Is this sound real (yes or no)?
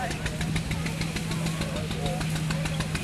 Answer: yes